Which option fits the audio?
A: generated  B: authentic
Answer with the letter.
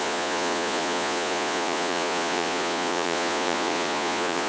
A